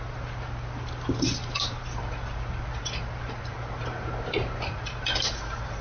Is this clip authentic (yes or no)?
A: yes